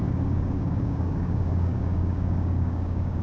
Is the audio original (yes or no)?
no